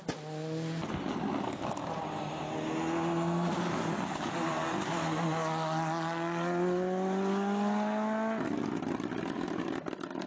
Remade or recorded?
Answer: recorded